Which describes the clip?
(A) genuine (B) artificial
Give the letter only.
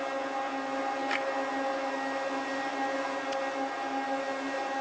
A